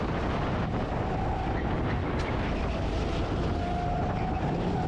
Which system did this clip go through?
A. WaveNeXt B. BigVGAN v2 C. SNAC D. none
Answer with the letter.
D